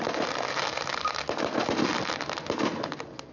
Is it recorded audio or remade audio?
recorded